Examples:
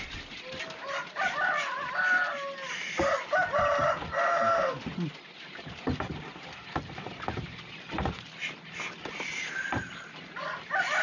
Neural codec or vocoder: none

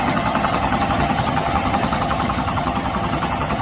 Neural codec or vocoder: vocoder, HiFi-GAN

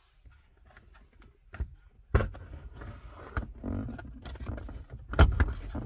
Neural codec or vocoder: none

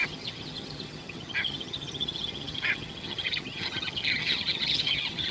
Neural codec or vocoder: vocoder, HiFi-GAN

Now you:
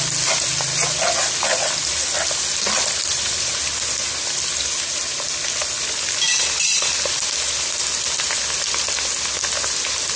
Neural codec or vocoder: none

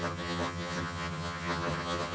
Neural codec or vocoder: vocoder, HiFi-GAN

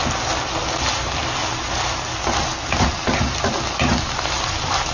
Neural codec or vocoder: none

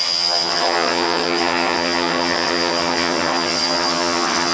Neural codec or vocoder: vocoder, HiFi-GAN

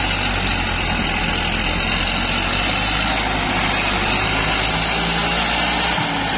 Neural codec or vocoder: none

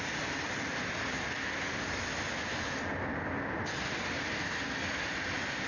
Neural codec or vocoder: none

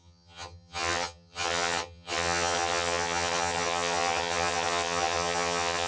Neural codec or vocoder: vocoder, HiFi-GAN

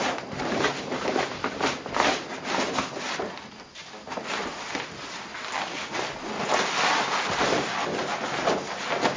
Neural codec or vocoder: none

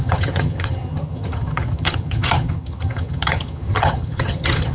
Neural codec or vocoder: vocoder, HiFi-GAN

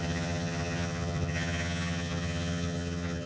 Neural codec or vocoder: vocoder, HiFi-GAN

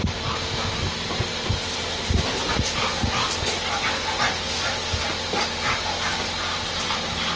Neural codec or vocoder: none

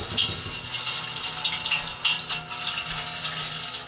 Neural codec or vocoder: none